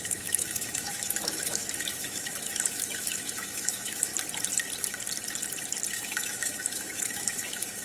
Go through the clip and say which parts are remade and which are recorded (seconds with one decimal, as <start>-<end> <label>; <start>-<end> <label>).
0.0-4.1 remade; 4.1-5.9 recorded; 5.9-7.8 remade